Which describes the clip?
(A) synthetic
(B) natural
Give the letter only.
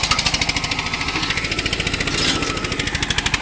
B